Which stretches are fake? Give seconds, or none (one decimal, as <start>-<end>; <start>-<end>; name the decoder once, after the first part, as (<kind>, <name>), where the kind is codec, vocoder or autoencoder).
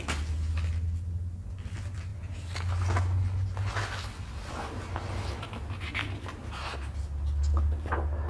none